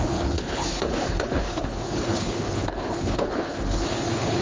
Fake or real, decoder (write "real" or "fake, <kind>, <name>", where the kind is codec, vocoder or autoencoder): fake, codec, HILCodec